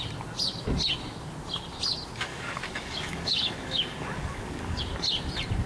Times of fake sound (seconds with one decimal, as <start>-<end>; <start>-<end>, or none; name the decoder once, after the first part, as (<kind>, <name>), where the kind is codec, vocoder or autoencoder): 2.3-4.8 (codec, DAC)